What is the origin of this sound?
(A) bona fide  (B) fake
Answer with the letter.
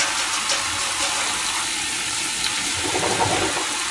A